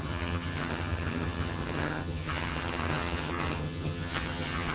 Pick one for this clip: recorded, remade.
remade